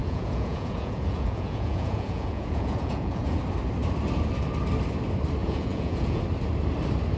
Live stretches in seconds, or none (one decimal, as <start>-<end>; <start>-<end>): 3.4-5.4; 6.2-7.2